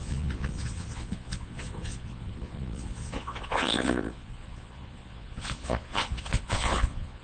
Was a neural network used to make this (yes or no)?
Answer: yes